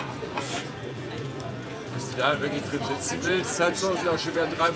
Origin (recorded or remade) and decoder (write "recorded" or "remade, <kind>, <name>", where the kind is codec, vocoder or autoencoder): remade, vocoder, Vocos